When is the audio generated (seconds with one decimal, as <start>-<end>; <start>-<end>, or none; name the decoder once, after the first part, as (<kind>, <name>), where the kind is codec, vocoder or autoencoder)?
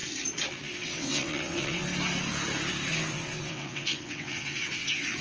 0.5-1.8 (vocoder, WaveNeXt); 2.9-5.2